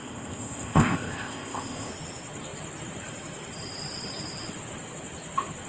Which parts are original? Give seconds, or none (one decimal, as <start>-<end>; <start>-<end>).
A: 1.9-5.7